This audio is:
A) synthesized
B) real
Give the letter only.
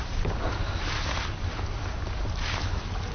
B